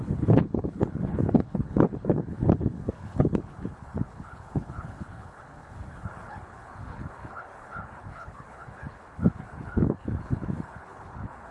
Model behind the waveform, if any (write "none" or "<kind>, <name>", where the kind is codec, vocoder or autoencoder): codec, HILCodec